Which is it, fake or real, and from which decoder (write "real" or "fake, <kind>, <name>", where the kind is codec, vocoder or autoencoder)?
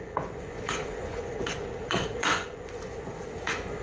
fake, vocoder, Vocos